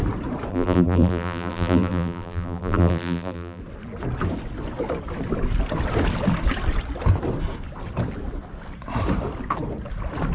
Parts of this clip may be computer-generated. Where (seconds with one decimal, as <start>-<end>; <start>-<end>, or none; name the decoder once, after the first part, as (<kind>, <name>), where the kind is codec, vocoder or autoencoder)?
0.5-3.6 (vocoder, BigVGAN v2)